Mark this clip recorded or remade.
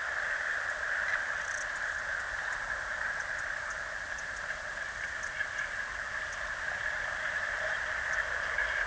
recorded